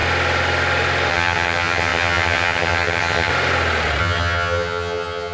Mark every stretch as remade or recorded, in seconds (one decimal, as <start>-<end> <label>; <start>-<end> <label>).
0.0-1.1 recorded; 1.1-3.3 remade; 3.3-4.0 recorded; 4.0-5.3 remade